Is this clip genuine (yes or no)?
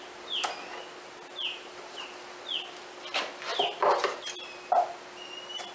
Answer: yes